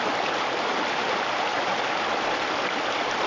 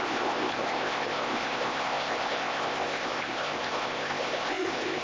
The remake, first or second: second